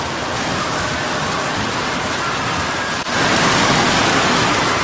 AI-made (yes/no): no